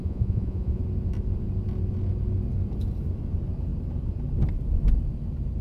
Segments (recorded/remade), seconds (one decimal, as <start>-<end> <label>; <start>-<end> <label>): 0.0-0.8 remade; 0.8-5.6 recorded

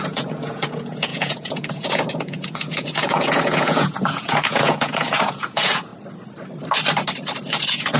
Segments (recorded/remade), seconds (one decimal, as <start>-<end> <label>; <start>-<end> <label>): 0.0-5.9 remade; 5.9-7.5 recorded; 7.5-8.0 remade

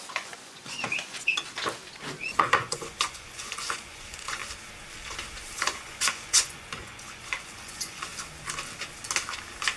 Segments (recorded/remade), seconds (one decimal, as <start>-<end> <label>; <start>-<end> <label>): 0.0-1.3 remade; 1.3-2.3 recorded; 2.3-4.4 remade; 4.4-5.6 recorded; 5.6-8.1 remade; 8.1-9.8 recorded

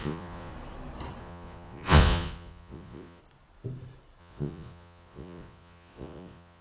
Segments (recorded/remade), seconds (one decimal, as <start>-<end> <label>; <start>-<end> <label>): 0.0-0.5 remade; 0.5-1.2 recorded; 1.2-3.2 remade; 3.2-4.2 recorded; 4.2-6.6 remade

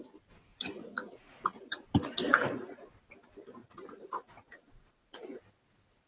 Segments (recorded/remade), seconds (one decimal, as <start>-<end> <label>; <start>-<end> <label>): 0.0-0.5 recorded; 0.5-1.9 remade; 1.9-2.3 recorded; 2.3-2.9 remade; 2.9-3.6 recorded; 3.6-5.4 remade; 5.4-6.1 recorded

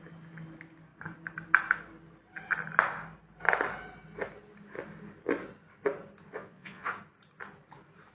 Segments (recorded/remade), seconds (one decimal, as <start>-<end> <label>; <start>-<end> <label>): 0.0-6.3 recorded; 6.3-6.9 remade; 6.9-8.1 recorded

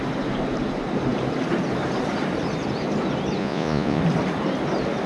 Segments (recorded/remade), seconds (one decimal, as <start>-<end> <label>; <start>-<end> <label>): 0.0-3.4 recorded; 3.4-4.0 remade; 4.0-5.1 recorded

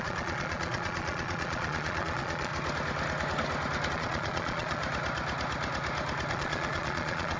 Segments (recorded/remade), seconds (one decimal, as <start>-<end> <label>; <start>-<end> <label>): 0.0-2.5 remade; 2.5-3.9 recorded; 3.9-4.8 remade; 4.8-6.3 recorded; 6.3-7.4 remade